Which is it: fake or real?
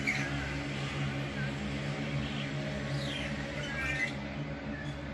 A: real